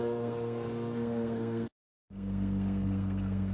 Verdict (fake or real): fake